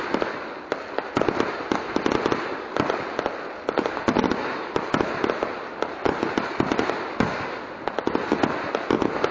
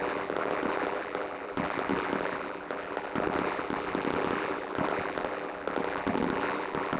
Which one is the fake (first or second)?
second